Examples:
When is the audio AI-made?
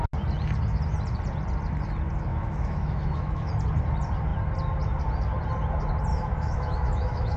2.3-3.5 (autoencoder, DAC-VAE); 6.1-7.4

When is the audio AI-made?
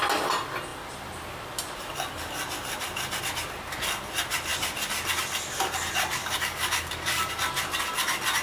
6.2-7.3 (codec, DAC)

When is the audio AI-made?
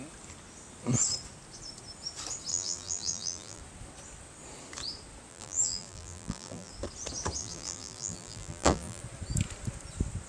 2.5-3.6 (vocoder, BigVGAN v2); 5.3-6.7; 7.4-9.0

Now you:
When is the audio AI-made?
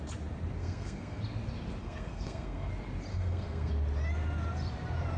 0.6-1.2 (codec, SNAC); 1.8-2.7; 3.1-3.7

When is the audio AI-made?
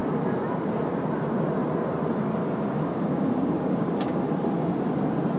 2.4-4.2 (codec, DAC)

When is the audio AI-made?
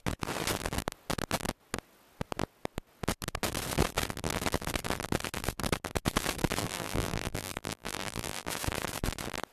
6.6-8.5 (vocoder, BigVGAN v2)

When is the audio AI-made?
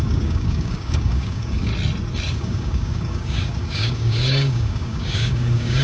0.0-1.7 (codec, DAC); 2.3-5.8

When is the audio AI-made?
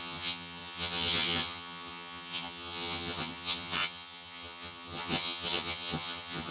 0.0-6.5 (vocoder, HiFi-GAN)